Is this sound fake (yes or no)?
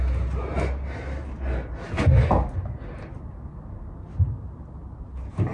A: no